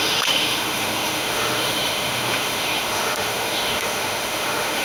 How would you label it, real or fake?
fake